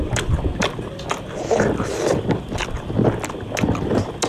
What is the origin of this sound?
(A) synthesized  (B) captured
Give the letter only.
B